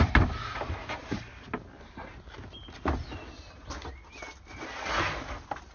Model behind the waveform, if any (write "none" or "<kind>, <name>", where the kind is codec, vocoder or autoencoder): none